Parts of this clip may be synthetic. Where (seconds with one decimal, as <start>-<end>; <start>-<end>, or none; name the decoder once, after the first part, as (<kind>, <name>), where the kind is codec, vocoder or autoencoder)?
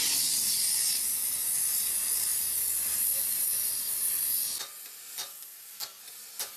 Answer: 5.3-6.0 (codec, SNAC)